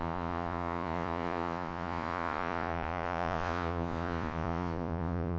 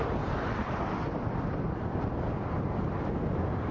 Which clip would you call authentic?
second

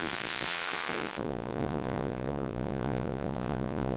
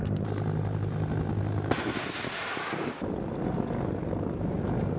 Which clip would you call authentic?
second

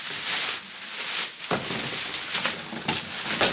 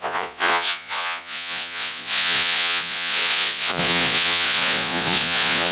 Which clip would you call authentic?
first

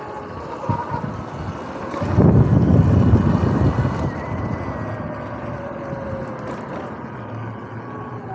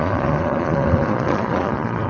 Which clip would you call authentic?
first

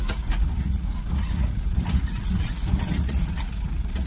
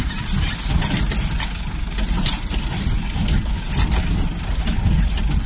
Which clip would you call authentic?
second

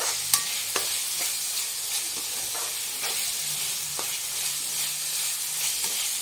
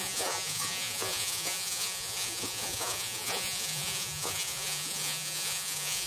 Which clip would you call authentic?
first